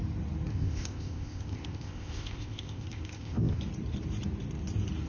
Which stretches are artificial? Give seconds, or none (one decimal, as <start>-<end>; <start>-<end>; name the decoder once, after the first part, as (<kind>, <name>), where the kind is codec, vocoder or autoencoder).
0.5-3.6 (codec, ZipCodec)